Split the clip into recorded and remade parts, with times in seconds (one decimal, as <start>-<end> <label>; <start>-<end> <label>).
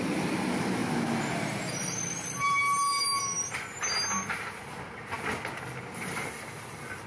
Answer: 0.0-7.1 recorded